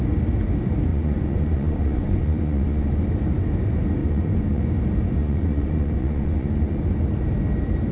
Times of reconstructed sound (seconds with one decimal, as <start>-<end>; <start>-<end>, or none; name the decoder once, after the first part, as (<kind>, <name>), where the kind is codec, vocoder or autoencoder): 0.9-3.0 (vocoder, Vocos); 4.0-4.6; 5.2-6.8